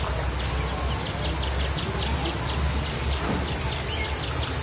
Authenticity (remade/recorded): recorded